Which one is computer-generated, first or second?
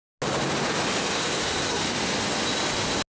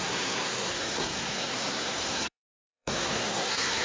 second